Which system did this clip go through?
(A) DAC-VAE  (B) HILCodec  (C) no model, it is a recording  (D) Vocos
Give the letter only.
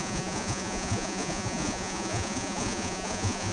D